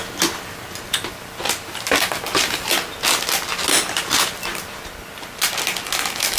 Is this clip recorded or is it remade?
recorded